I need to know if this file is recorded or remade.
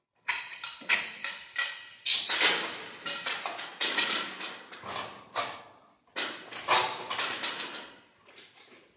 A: recorded